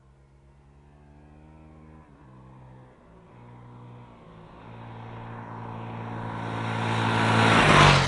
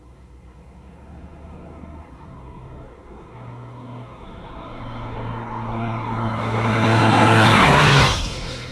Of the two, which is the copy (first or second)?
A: second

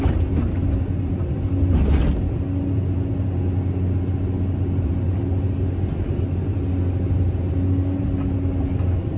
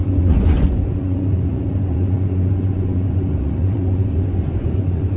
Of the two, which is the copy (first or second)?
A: second